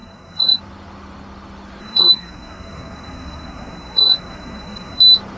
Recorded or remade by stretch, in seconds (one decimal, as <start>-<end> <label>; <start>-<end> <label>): 0.0-0.6 remade; 0.6-1.8 recorded; 1.8-5.0 remade; 5.0-5.4 recorded